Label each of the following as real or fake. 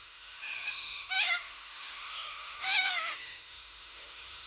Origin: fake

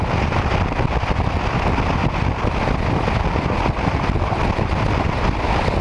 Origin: real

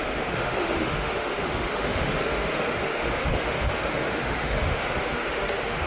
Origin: fake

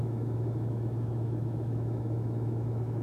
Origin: fake